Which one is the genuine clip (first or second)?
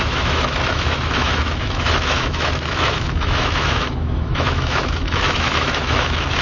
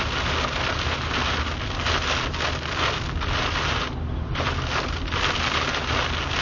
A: second